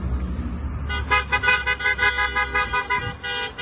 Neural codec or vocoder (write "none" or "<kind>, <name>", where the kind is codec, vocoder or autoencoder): none